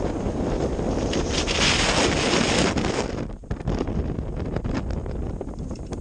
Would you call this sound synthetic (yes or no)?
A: no